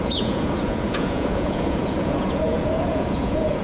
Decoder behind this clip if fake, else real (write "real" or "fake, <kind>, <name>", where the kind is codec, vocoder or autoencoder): fake, vocoder, Vocos